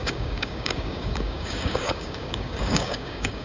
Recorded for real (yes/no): no